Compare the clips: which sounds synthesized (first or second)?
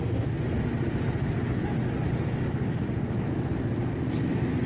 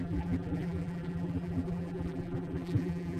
second